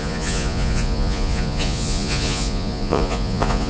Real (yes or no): no